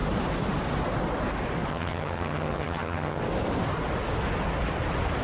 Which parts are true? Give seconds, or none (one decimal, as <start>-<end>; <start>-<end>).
0.0-1.7; 3.2-5.2